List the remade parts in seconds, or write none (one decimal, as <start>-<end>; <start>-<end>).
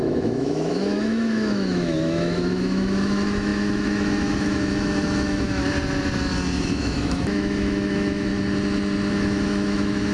0.0-5.6; 6.6-8.3; 9.1-10.1